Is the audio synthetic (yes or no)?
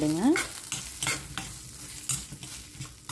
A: no